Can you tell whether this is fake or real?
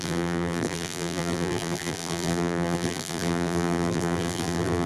fake